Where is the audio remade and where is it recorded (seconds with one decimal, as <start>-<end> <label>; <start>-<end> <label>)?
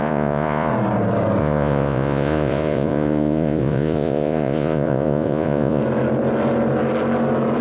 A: 0.0-0.7 remade; 0.7-1.4 recorded; 1.4-5.8 remade; 5.8-7.6 recorded